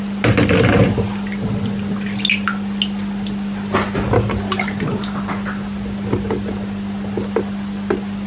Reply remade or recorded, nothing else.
recorded